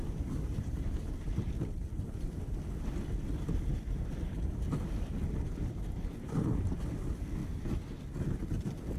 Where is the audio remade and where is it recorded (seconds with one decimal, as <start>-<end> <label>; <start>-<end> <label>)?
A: 0.0-9.0 recorded